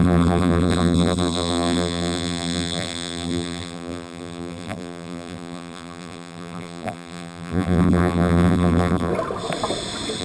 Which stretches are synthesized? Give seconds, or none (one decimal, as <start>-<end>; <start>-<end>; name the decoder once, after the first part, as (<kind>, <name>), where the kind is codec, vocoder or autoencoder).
0.0-9.1 (vocoder, BigVGAN v2)